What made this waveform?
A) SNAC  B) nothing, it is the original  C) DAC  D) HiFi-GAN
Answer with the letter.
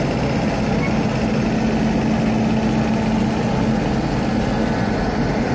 B